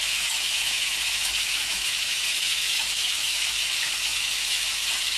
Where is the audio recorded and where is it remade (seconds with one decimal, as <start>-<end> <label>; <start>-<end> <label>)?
0.0-5.2 remade